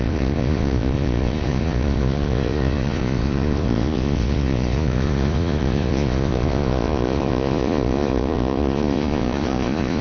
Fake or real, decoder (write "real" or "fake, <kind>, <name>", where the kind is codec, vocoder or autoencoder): fake, vocoder, Vocos